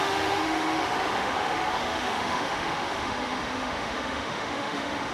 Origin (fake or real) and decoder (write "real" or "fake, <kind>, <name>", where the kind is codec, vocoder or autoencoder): fake, autoencoder, DAC-VAE